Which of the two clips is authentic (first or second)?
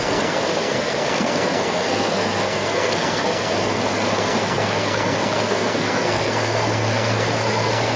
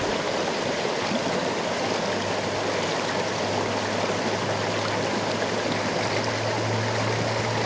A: second